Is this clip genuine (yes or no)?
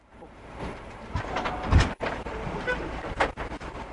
no